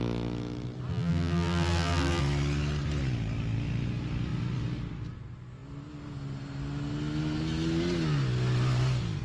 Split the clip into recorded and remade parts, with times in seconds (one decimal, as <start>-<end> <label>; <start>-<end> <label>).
0.0-0.9 recorded; 0.9-2.2 remade; 2.2-9.2 recorded